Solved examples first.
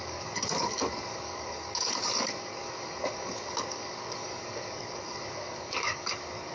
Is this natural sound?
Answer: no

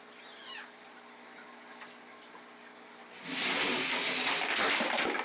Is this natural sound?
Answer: yes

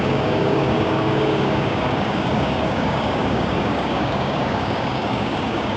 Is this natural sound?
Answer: no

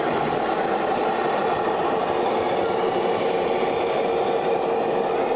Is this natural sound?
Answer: yes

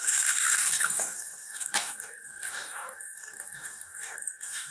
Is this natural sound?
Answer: no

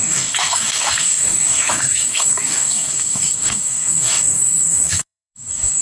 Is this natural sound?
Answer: no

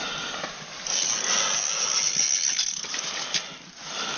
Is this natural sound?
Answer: yes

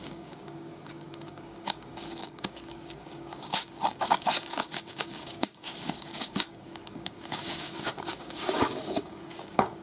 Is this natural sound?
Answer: no